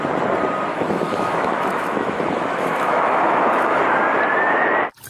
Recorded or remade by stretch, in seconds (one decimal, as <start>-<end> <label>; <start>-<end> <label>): 0.0-0.7 recorded; 0.7-3.8 remade; 3.8-5.1 recorded